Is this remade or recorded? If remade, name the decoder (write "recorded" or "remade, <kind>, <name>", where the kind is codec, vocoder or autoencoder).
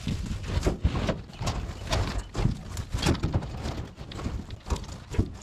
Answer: recorded